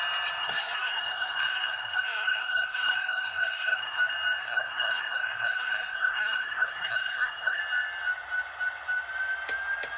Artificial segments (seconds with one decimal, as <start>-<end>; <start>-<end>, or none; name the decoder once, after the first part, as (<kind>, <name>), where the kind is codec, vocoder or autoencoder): 0.4-4.0 (codec, SNAC); 4.4-7.6